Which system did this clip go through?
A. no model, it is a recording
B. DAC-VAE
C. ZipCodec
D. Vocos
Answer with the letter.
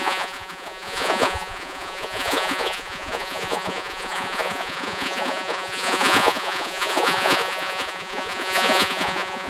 D